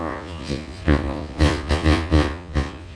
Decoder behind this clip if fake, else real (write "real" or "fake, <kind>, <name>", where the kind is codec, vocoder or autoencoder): fake, vocoder, Vocos